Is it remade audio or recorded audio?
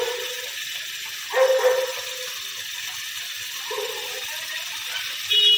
recorded